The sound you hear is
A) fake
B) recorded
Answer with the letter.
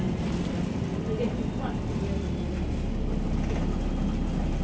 B